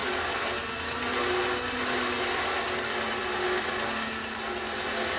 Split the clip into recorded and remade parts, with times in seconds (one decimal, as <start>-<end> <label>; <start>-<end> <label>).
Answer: 0.0-5.2 recorded